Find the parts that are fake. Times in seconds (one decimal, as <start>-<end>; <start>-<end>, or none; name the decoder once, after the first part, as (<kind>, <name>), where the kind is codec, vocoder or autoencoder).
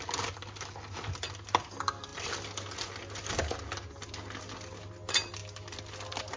none